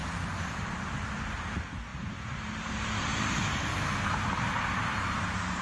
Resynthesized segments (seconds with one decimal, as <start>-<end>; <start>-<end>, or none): 0.6-5.6